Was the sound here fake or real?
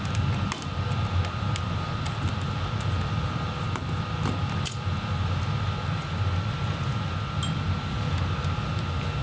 real